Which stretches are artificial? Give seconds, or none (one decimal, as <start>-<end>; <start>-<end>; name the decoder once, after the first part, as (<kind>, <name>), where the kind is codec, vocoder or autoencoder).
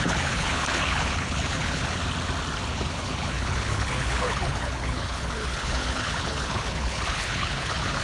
0.0-2.0 (codec, HILCodec); 2.7-8.0